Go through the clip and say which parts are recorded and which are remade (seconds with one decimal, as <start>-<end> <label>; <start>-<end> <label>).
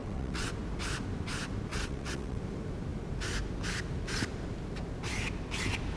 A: 0.0-0.5 remade; 0.5-1.7 recorded; 1.7-2.4 remade; 2.4-6.0 recorded